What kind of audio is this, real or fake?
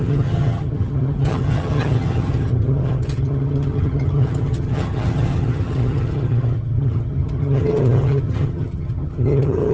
fake